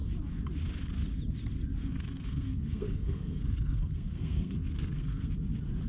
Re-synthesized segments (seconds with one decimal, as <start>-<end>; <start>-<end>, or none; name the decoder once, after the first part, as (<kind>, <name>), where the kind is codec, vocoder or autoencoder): 1.8-5.3 (codec, SNAC)